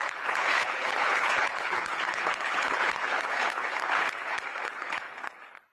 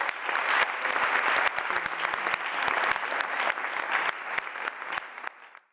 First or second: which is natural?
second